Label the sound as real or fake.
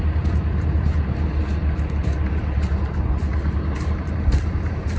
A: real